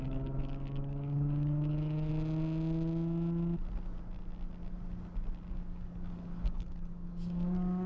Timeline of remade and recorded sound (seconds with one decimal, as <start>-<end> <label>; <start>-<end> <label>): 0.0-2.1 remade; 2.1-5.5 recorded; 5.5-7.9 remade